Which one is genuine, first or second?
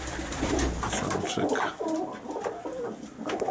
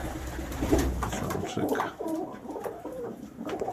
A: first